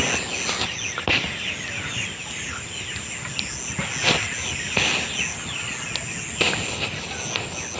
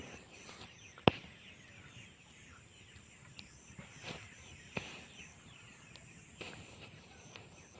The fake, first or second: second